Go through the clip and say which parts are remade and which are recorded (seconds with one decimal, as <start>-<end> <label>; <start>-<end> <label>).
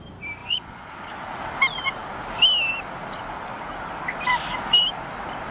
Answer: 0.0-0.4 recorded; 0.4-0.9 remade; 0.9-5.5 recorded